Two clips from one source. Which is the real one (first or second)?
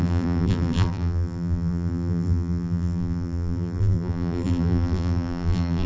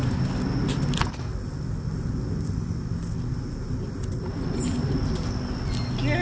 second